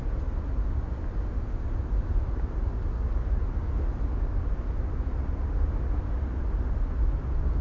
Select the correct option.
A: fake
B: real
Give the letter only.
B